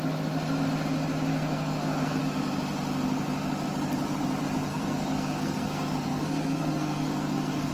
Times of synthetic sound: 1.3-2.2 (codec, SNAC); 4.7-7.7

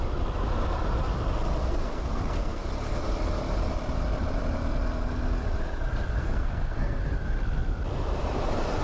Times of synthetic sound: 1.6-2.7 (codec, SNAC); 6.2-7.0

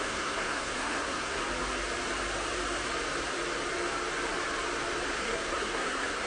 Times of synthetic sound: 0.0-1.4 (codec, SNAC); 5.2-6.3

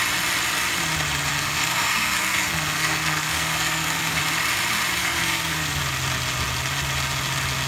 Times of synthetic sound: 1.3-4.2 (codec, SNAC); 5.0-5.8

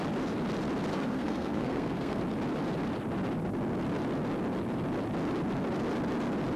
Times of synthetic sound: 0.9-2.2 (codec, SNAC)

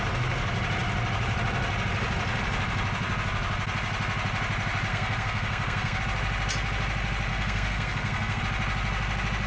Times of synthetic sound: 4.9-6.0 (codec, SNAC); 7.3-8.4